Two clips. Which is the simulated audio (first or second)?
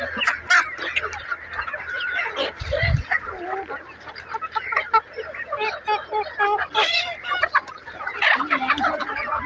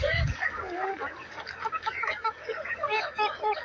second